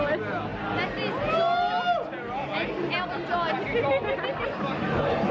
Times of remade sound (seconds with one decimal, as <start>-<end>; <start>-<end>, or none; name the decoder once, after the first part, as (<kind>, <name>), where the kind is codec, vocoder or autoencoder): none